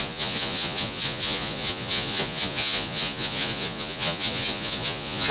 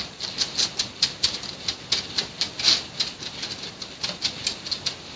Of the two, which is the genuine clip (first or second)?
second